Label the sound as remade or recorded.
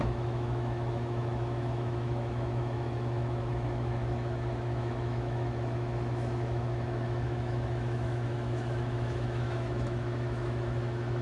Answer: remade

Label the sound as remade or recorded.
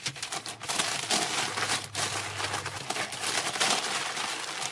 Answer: recorded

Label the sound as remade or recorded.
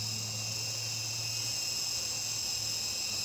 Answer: recorded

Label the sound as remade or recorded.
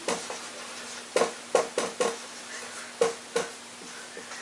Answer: recorded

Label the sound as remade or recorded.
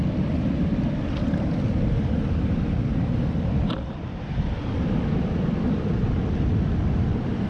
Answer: recorded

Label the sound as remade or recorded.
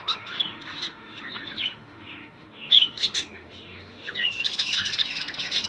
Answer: remade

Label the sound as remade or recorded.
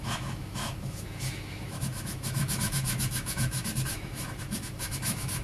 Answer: remade